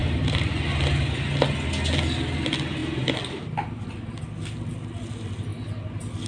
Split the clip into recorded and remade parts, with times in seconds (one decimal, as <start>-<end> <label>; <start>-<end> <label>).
0.0-0.6 remade; 0.6-6.3 recorded